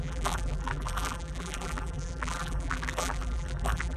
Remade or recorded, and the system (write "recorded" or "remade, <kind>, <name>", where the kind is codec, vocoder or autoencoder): remade, vocoder, BigVGAN v2